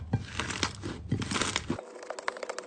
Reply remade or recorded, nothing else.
recorded